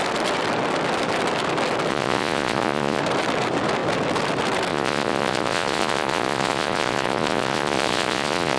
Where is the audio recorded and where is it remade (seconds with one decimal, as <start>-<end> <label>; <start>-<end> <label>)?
0.0-1.9 recorded; 1.9-3.0 remade; 3.0-4.7 recorded; 4.7-8.6 remade